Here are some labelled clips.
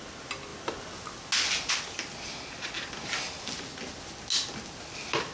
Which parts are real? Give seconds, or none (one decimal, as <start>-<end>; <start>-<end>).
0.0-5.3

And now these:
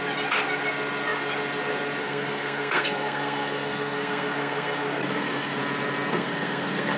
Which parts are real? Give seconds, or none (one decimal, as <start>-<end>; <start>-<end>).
0.0-2.0; 5.6-6.1

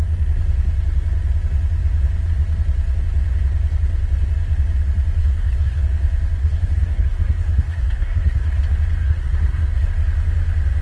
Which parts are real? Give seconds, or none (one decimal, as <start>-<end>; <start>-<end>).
0.0-5.2; 5.8-6.4; 8.6-9.0; 9.9-10.8